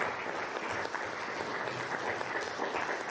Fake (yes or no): no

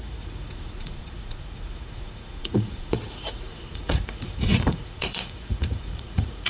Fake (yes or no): yes